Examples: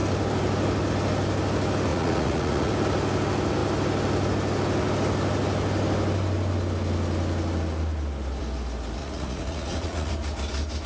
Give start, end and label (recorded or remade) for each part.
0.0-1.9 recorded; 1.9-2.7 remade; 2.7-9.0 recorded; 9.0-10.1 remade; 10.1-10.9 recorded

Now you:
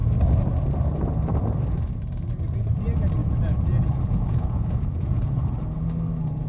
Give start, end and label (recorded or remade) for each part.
0.0-3.2 recorded; 3.2-5.4 remade; 5.4-6.5 recorded